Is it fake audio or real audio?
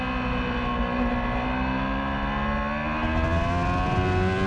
real